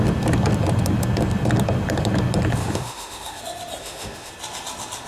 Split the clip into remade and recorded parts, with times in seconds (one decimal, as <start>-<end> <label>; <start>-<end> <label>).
0.0-2.6 recorded; 2.6-3.4 remade; 3.4-3.8 recorded; 3.8-4.3 remade; 4.3-5.1 recorded

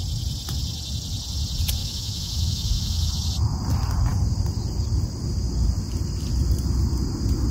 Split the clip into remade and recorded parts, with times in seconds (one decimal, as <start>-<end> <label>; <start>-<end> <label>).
0.0-1.8 recorded; 1.8-3.1 remade; 3.1-7.5 recorded